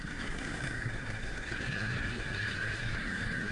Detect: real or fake fake